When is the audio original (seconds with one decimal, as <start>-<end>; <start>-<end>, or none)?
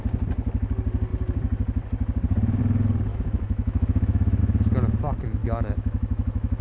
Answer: 0.0-3.1; 4.4-5.4